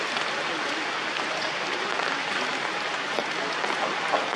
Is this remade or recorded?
recorded